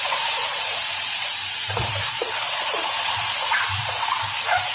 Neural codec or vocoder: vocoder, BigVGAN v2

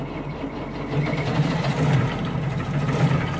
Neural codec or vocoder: none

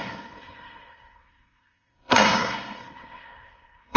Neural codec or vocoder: codec, SNAC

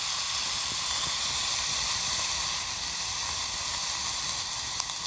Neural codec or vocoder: none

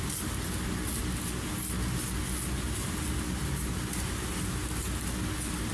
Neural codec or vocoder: none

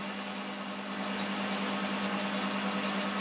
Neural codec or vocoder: none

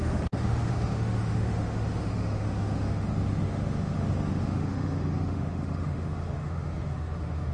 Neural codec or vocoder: autoencoder, DAC-VAE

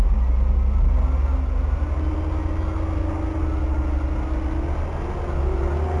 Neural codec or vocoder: none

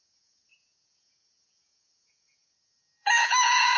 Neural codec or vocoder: vocoder, Vocos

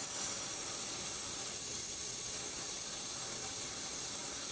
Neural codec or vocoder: none